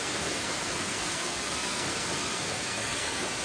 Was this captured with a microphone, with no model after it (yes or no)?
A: no